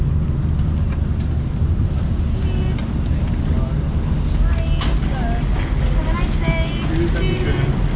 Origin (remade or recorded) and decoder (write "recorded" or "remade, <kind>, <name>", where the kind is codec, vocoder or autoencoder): recorded